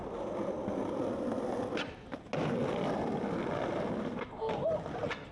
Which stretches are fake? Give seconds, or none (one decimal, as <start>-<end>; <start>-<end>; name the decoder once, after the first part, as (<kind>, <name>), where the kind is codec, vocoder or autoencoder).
none